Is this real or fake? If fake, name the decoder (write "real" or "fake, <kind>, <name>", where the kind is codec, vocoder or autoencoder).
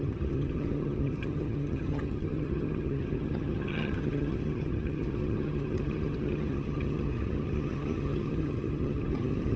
fake, vocoder, HiFi-GAN